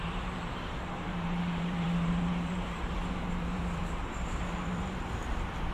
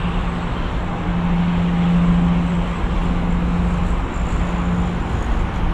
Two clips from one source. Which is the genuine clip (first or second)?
second